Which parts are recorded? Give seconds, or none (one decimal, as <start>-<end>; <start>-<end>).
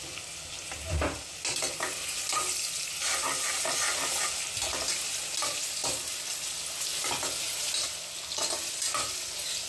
0.0-9.7